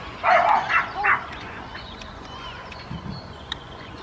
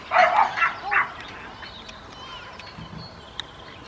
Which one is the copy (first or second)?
first